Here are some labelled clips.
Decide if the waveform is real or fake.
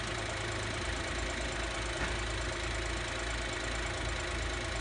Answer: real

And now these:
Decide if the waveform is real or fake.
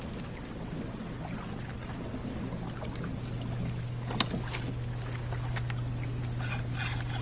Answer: real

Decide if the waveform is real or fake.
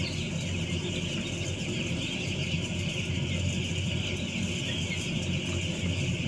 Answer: real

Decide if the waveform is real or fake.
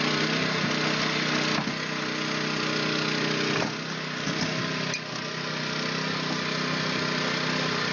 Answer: real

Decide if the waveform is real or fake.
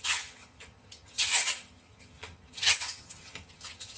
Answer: fake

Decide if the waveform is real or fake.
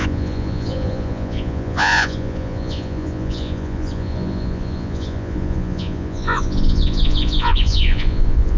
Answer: fake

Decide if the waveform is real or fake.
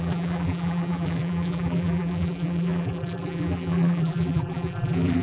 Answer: fake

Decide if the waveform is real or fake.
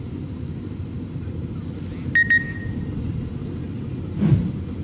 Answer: real